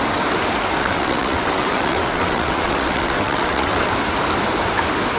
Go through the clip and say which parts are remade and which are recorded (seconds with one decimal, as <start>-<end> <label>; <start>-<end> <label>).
0.0-0.8 recorded; 0.8-3.9 remade; 3.9-5.2 recorded